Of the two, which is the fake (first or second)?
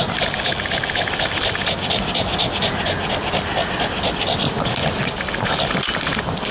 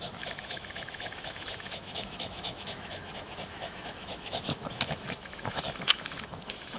second